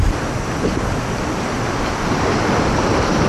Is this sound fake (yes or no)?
yes